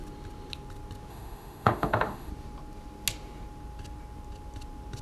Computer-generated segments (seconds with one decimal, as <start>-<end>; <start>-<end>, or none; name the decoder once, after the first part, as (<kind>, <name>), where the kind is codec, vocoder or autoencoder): 1.1-2.3 (autoencoder, DAC-VAE)

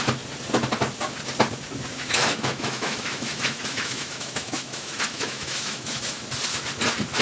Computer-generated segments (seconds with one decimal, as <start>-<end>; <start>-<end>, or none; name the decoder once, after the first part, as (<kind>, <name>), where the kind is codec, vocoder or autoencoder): 1.9-6.2 (autoencoder, DAC-VAE)

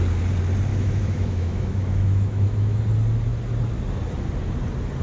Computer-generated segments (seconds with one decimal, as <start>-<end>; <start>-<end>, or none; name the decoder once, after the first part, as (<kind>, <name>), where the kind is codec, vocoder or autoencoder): 0.7-2.8 (autoencoder, DAC-VAE)

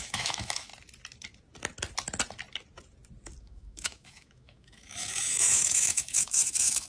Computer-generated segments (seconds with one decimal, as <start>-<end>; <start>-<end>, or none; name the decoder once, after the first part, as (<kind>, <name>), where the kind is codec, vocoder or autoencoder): 0.0-0.7 (autoencoder, DAC-VAE); 3.4-6.9

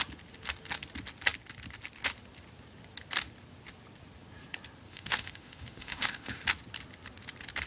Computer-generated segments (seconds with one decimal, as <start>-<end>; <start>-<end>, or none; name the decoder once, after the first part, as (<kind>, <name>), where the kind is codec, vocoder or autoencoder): 4.9-6.4 (autoencoder, DAC-VAE)

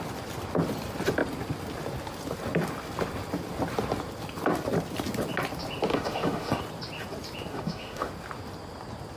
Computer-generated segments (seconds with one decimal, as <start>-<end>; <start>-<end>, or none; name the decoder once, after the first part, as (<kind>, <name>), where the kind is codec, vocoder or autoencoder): 5.9-6.6 (autoencoder, DAC-VAE); 7.5-8.1

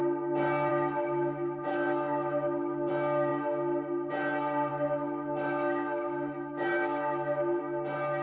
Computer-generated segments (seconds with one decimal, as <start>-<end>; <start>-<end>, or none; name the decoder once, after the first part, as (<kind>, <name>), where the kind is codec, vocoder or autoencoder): 0.7-2.9 (autoencoder, DAC-VAE); 4.7-7.6